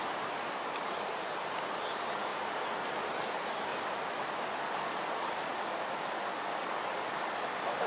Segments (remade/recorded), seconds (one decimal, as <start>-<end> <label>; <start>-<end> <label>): 0.0-3.7 remade; 3.7-4.7 recorded; 4.7-5.5 remade; 5.5-6.6 recorded; 6.6-7.9 remade